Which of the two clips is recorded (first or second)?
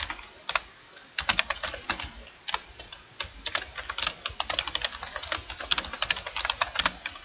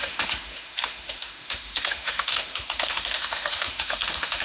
first